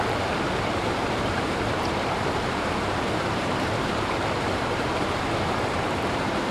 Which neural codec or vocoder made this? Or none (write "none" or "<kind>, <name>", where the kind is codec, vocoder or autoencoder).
vocoder, BigVGAN v2